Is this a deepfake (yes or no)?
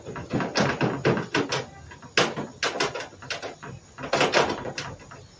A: no